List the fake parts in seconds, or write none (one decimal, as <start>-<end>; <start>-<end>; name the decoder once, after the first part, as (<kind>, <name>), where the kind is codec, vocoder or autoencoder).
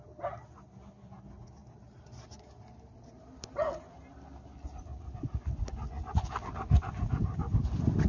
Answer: 1.6-2.5 (vocoder, BigVGAN v2)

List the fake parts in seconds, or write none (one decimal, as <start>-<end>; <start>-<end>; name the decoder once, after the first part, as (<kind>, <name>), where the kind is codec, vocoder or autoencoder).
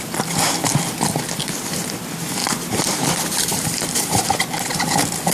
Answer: 2.4-4.3 (vocoder, BigVGAN v2)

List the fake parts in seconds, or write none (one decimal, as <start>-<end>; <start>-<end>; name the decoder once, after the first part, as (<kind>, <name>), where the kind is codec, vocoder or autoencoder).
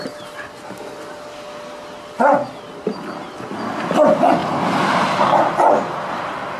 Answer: 4.4-5.5 (vocoder, BigVGAN v2)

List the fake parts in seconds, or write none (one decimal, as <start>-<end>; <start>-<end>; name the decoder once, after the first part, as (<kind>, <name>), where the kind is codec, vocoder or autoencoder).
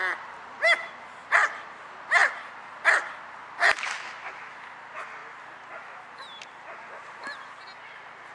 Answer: 2.2-2.8 (vocoder, BigVGAN v2)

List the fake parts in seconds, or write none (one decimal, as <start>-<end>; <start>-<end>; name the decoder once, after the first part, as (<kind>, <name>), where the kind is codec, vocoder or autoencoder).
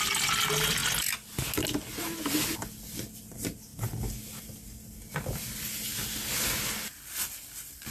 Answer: 0.0-0.8 (vocoder, BigVGAN v2); 2.0-3.7; 4.4-5.9; 6.9-7.9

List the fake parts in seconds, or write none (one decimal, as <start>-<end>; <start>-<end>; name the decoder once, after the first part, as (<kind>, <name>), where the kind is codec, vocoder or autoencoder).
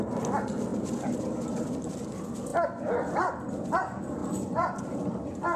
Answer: none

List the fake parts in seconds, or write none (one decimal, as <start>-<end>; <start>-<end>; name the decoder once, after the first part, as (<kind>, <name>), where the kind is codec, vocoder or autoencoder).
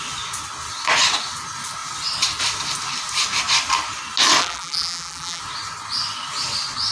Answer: 4.4-5.4 (vocoder, BigVGAN v2)